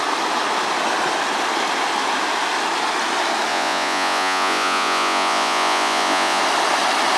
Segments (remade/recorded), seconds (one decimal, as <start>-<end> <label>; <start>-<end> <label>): 0.0-3.5 recorded; 3.5-6.4 remade; 6.4-7.2 recorded